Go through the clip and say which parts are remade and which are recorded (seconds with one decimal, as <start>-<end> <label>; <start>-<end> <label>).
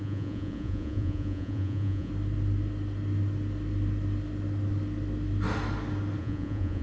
0.0-2.1 remade; 2.1-6.2 recorded; 6.2-6.8 remade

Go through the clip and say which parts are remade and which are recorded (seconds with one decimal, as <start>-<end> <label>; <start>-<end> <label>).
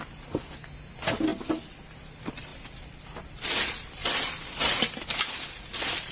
0.0-6.1 recorded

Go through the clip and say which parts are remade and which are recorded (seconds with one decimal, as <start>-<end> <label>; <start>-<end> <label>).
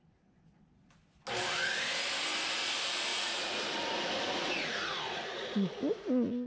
0.0-3.1 recorded; 3.1-6.5 remade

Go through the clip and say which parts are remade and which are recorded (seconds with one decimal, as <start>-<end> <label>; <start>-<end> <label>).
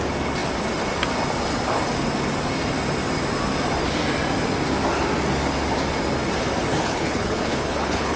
0.0-6.7 recorded; 6.7-8.2 remade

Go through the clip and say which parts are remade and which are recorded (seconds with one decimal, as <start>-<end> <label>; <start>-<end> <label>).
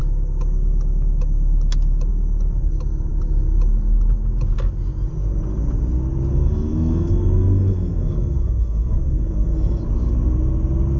0.0-6.3 recorded; 6.3-9.8 remade; 9.8-11.0 recorded